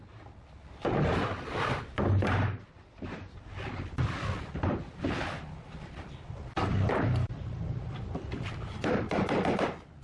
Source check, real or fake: real